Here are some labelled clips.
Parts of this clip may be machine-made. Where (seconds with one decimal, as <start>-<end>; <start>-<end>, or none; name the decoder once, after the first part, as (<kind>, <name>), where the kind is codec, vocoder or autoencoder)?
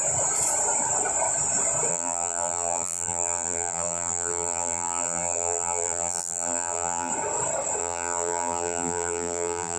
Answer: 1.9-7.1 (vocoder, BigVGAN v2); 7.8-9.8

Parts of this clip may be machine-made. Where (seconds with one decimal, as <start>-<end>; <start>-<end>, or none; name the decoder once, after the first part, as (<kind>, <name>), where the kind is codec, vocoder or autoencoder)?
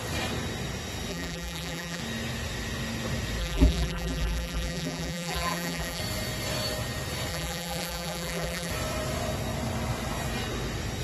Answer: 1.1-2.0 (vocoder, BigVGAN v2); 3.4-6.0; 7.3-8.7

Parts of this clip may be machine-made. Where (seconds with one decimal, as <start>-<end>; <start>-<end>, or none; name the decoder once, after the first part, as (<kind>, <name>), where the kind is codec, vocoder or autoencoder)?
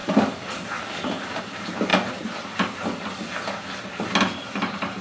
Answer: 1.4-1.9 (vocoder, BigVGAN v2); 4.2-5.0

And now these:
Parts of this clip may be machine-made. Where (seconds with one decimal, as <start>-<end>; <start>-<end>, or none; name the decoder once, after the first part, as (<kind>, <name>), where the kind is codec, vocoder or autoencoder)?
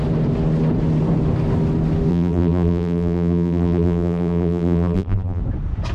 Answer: 2.1-5.4 (vocoder, BigVGAN v2)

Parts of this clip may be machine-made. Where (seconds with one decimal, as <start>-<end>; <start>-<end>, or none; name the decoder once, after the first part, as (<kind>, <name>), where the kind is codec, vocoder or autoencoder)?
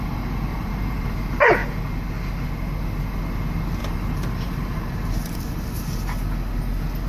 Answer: 0.5-1.0 (vocoder, BigVGAN v2); 3.8-5.4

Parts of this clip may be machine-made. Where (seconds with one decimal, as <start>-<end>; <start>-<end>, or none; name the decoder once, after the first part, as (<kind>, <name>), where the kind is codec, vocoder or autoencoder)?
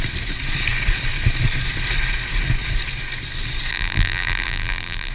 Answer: 3.7-5.1 (vocoder, BigVGAN v2)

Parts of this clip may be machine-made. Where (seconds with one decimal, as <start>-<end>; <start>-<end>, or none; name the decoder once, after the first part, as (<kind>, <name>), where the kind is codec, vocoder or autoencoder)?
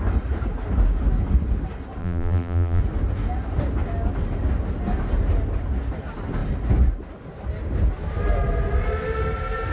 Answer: 2.0-2.8 (vocoder, BigVGAN v2)